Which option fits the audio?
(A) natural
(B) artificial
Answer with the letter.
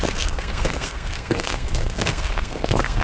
B